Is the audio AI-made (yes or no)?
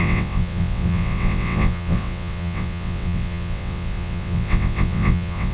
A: yes